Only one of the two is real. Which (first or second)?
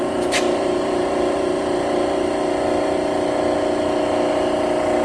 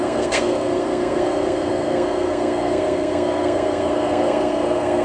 first